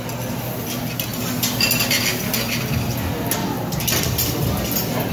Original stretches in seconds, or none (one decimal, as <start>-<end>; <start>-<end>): 0.0-5.1